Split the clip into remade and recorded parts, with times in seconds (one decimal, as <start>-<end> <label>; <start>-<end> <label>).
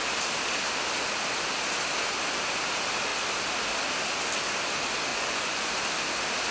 0.0-5.1 recorded; 5.1-5.8 remade; 5.8-6.5 recorded